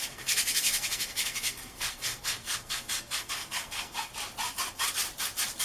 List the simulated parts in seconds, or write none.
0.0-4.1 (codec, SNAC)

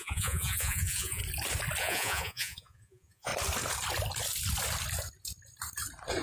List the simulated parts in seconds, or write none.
0.0-1.2 (vocoder, Vocos); 1.8-3.3

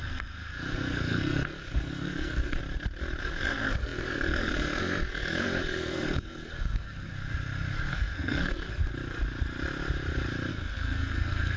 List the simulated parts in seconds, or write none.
0.0-2.6 (codec, SNAC); 3.2-7.1; 7.9-8.8; 10.5-11.6

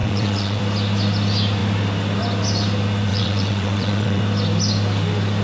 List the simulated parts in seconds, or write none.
0.0-0.6 (vocoder, WaveNeXt); 3.1-4.2